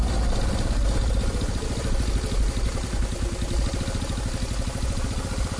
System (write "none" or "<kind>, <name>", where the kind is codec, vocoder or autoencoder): none